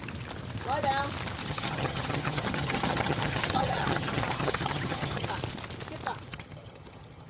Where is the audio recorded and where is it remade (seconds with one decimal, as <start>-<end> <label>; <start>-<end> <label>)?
0.0-1.4 recorded; 1.4-5.3 remade; 5.3-6.3 recorded; 6.3-7.3 remade